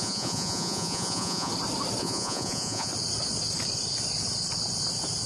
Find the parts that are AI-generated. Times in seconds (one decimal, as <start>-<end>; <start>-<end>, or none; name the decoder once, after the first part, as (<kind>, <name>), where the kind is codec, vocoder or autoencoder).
0.0-1.5 (vocoder, Vocos); 2.0-2.9